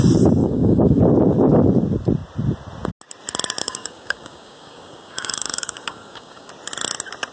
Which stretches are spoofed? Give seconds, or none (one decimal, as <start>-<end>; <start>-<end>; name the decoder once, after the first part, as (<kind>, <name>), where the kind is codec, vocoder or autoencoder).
0.4-1.0 (codec, DAC); 3.6-6.5

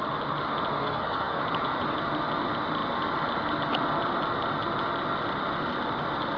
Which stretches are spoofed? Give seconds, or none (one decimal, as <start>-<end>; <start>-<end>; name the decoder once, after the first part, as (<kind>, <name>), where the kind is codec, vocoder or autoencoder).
0.8-1.4 (codec, SNAC)

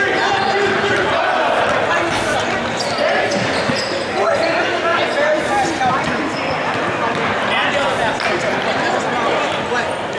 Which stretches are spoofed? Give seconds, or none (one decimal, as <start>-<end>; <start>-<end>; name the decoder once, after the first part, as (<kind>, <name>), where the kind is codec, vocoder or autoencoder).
none

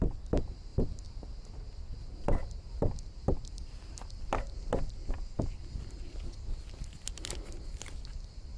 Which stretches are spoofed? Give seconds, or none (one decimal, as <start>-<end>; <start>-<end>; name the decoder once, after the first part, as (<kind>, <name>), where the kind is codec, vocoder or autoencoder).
none

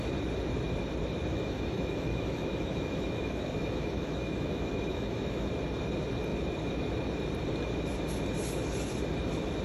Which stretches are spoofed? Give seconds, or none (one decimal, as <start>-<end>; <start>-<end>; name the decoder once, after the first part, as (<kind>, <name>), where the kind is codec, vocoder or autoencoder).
1.3-5.5 (autoencoder, DAC-VAE)

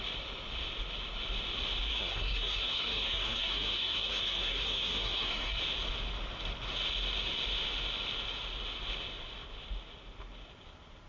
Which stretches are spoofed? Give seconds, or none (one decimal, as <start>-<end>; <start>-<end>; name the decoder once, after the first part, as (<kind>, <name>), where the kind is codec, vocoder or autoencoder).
1.9-5.6 (codec, SNAC)

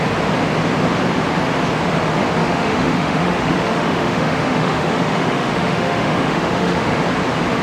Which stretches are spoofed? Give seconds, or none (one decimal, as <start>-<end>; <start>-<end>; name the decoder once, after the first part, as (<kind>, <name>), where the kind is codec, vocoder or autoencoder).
2.4-7.0 (autoencoder, DAC-VAE)